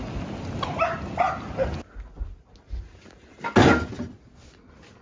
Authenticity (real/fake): real